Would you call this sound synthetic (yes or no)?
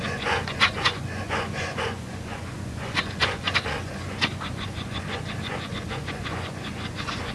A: yes